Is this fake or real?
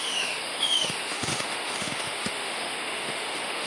fake